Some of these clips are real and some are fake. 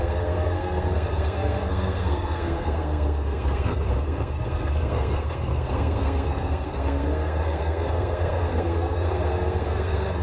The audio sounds fake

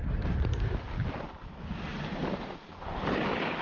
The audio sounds real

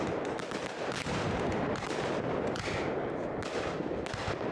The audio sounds real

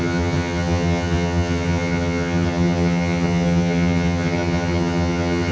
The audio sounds fake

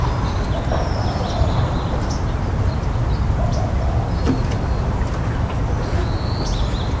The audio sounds real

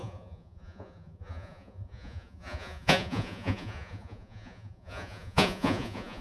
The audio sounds fake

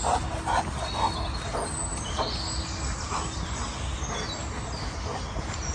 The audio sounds real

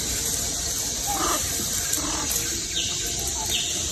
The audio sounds real